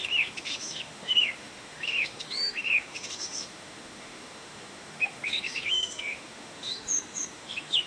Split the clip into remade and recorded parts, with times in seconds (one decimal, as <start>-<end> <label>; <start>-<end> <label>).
0.0-7.9 remade